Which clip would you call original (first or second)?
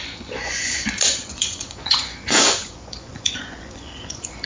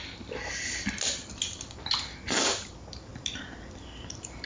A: second